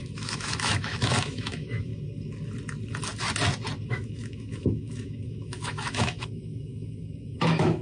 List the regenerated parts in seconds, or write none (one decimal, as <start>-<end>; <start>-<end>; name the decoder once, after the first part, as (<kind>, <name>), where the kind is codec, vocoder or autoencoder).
0.0-1.9 (autoencoder, DAC-VAE); 3.9-7.8